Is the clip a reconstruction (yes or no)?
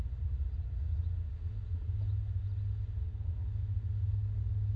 no